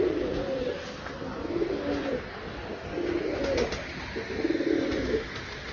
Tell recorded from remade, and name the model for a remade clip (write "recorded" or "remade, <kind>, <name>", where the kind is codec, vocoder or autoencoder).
recorded